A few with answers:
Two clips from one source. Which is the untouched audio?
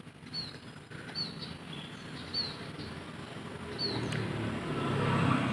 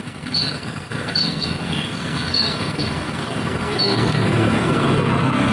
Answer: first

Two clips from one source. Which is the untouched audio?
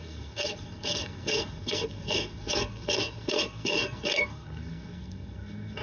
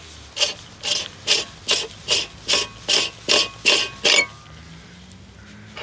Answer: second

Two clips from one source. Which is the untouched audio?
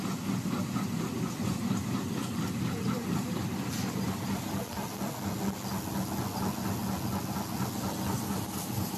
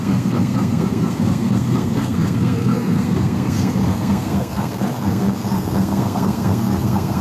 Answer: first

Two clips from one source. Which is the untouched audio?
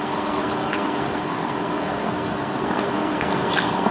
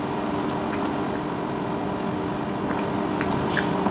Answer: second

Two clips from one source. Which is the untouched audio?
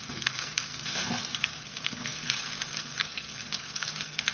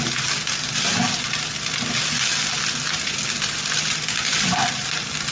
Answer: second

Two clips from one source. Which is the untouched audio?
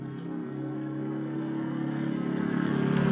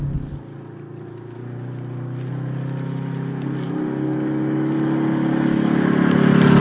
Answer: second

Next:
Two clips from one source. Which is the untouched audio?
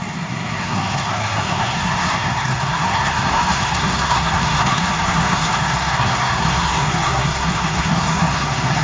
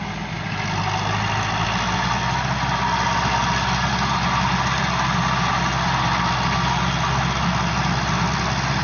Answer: second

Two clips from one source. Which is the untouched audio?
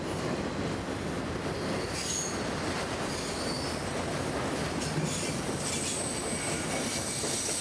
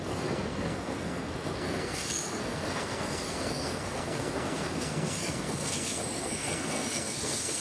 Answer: first